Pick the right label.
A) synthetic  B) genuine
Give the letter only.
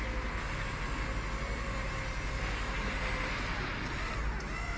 B